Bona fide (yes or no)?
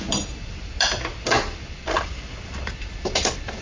yes